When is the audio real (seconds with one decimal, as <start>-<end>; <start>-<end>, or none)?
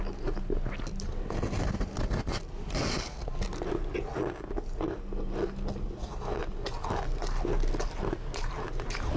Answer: 0.0-9.2